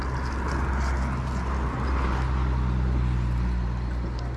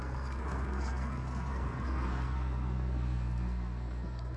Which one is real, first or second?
first